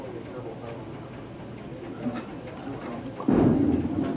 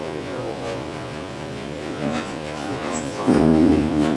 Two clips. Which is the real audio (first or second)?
first